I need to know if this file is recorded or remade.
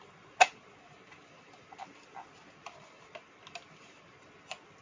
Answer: recorded